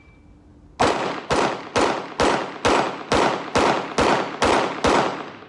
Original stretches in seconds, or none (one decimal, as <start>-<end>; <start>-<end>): 0.0-5.5